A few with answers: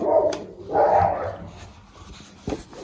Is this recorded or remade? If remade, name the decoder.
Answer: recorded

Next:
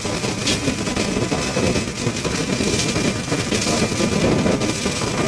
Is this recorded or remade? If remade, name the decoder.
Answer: recorded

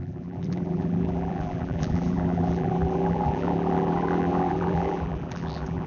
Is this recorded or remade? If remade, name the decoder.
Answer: remade, vocoder, BigVGAN v2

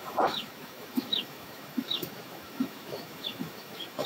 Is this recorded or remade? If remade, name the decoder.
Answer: remade, autoencoder, DAC-VAE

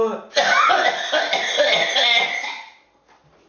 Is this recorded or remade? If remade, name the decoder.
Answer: recorded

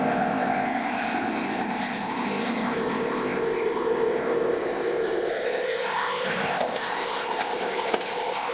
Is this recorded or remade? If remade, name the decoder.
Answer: remade, codec, ZipCodec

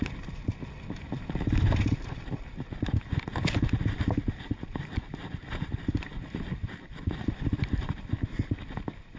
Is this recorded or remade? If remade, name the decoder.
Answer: recorded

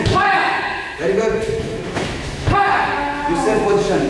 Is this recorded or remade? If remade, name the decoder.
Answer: remade, autoencoder, DAC-VAE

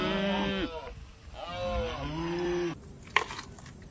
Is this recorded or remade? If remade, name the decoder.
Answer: recorded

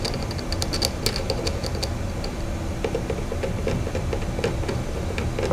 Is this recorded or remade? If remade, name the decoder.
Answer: recorded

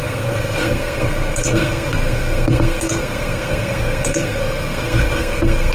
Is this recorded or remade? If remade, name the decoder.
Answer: remade, codec, SNAC